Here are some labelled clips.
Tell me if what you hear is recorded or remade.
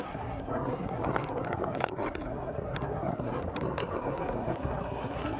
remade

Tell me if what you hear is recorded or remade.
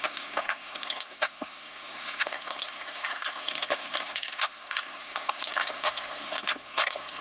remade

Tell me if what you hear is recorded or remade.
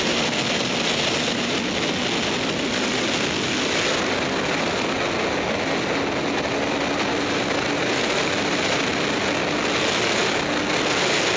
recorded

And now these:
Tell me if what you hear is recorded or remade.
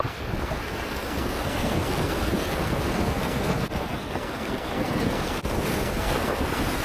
remade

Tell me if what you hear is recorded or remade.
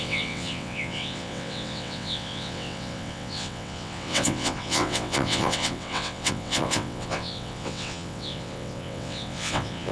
remade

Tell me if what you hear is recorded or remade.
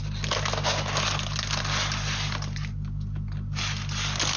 recorded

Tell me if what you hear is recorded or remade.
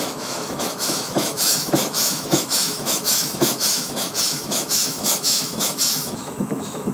remade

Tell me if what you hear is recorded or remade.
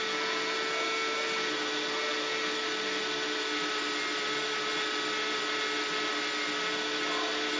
recorded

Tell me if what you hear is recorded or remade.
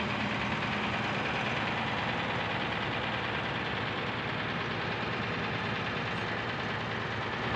recorded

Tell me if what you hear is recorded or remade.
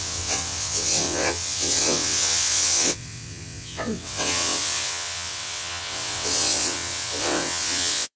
remade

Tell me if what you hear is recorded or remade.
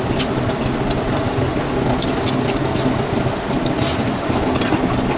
recorded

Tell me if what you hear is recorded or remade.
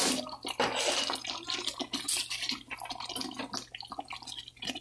recorded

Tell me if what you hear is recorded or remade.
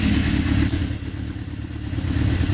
recorded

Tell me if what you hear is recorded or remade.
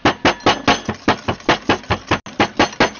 recorded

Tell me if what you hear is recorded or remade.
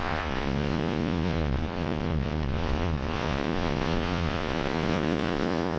remade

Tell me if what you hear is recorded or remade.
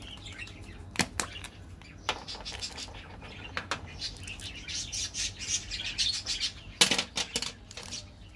recorded